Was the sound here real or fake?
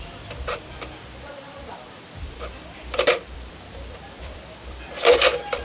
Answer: fake